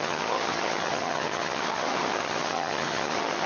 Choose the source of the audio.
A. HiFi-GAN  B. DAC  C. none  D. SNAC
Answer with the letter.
A